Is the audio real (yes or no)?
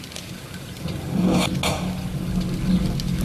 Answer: yes